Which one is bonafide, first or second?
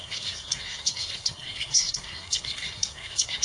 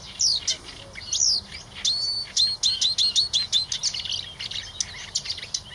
second